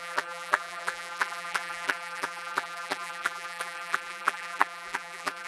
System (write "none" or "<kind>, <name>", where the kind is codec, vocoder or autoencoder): vocoder, BigVGAN v2